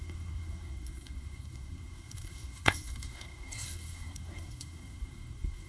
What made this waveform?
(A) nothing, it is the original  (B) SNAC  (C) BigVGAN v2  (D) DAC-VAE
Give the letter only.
B